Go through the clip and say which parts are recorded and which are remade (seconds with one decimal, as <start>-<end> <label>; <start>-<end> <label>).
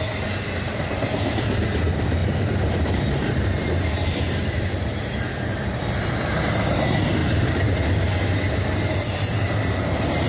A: 0.0-3.2 recorded; 3.2-5.8 remade; 5.8-7.2 recorded; 7.2-7.8 remade; 7.8-10.3 recorded